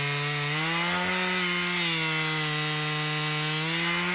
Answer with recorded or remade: recorded